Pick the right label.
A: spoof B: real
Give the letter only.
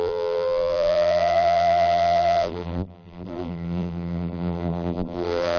A